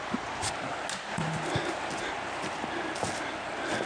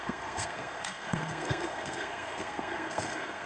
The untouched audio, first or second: first